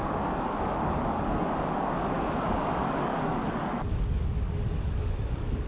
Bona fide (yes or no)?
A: no